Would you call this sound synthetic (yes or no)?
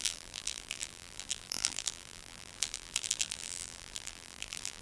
yes